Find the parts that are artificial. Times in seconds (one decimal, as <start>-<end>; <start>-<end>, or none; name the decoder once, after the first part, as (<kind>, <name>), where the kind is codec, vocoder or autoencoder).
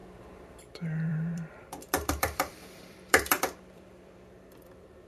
0.0-5.1 (vocoder, BigVGAN v2)